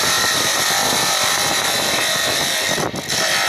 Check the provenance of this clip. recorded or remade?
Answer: recorded